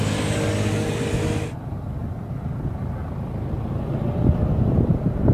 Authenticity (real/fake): real